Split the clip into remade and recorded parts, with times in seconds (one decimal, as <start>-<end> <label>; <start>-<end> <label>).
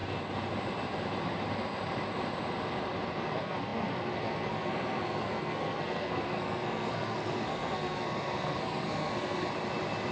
0.0-3.2 recorded; 3.2-9.5 remade; 9.5-10.1 recorded